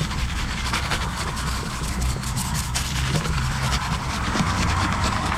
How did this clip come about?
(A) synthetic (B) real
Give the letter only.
A